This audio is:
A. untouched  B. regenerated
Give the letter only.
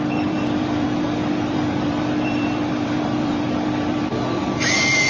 B